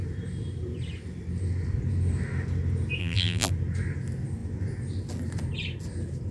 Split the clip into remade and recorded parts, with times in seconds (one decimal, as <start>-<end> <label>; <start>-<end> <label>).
0.0-3.0 recorded; 3.0-3.5 remade; 3.5-6.3 recorded